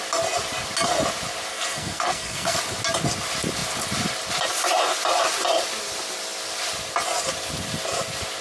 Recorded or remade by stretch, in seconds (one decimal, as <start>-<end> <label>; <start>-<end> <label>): 0.0-1.5 recorded; 1.5-2.6 remade; 2.6-8.4 recorded